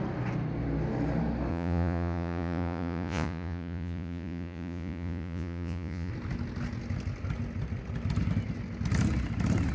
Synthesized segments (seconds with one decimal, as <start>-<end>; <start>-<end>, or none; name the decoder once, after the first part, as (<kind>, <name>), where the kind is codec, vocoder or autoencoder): 1.5-6.1 (vocoder, Vocos)